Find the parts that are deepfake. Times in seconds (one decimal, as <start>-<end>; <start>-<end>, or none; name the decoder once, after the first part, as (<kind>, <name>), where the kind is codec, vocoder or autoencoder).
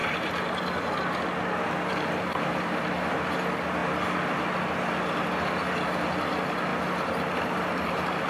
0.0-0.6 (vocoder, BigVGAN v2); 1.9-2.8